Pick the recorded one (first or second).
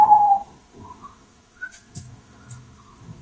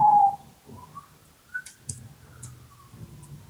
second